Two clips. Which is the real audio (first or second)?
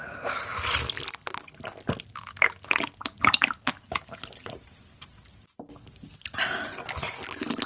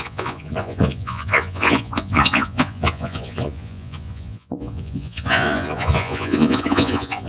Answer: first